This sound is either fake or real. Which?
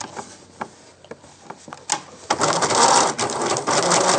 real